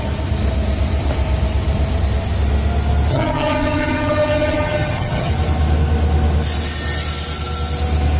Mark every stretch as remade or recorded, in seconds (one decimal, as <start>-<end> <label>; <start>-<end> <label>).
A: 0.0-3.1 recorded; 3.1-5.3 remade; 5.3-8.2 recorded